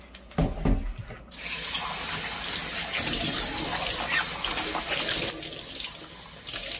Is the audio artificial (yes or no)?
no